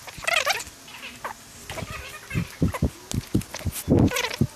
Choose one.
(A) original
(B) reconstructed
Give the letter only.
A